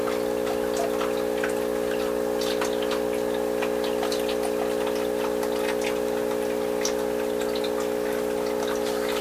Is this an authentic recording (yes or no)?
yes